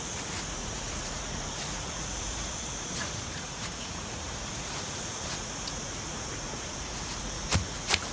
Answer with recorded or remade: remade